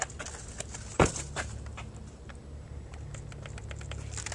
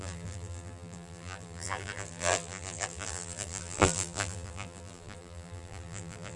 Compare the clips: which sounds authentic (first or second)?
first